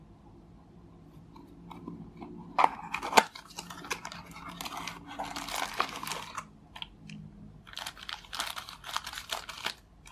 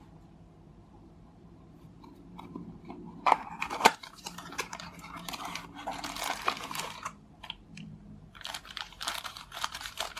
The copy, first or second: second